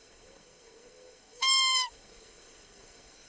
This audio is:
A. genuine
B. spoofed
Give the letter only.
B